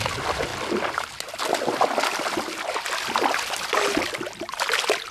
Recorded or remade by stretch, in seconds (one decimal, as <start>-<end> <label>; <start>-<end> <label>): 0.0-5.1 recorded